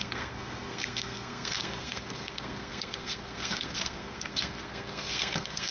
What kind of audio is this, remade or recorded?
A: remade